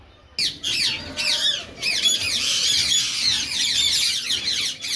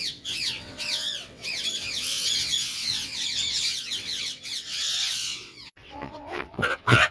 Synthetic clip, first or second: second